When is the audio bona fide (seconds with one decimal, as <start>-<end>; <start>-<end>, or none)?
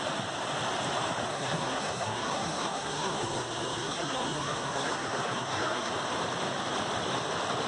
0.0-1.3; 5.9-7.7